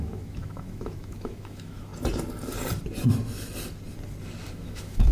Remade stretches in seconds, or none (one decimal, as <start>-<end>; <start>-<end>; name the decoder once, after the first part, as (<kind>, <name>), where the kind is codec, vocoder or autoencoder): 0.0-1.9 (autoencoder, DAC-VAE); 4.5-5.1